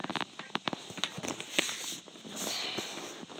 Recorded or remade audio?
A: recorded